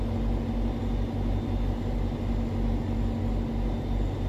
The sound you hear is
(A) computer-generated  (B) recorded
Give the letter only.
B